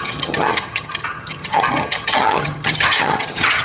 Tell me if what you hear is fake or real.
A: fake